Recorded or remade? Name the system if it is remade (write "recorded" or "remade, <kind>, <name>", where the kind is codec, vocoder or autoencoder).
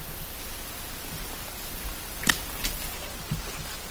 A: recorded